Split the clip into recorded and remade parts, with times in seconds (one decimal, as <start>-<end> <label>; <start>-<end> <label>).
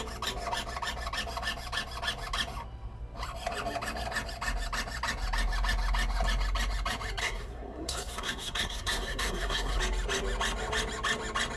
0.0-7.2 recorded; 7.2-9.8 remade; 9.8-11.6 recorded